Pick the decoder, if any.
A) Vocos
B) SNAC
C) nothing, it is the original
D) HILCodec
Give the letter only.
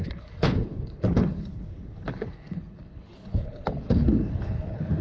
D